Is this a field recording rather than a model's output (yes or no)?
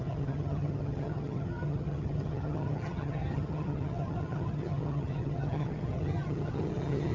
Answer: no